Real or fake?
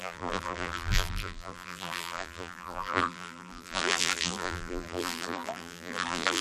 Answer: fake